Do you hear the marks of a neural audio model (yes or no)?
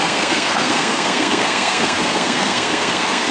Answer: yes